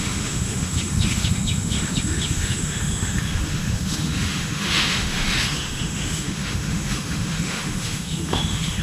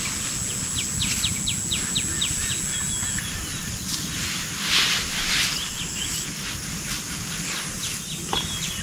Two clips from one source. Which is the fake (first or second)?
first